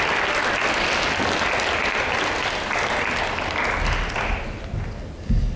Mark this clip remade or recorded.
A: recorded